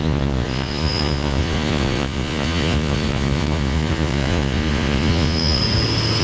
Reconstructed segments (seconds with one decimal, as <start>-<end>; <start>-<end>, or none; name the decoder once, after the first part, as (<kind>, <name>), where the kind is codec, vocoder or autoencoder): 0.0-5.6 (vocoder, Vocos)